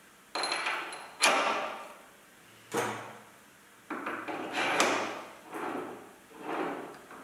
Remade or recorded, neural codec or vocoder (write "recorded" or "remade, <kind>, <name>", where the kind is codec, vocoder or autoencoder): recorded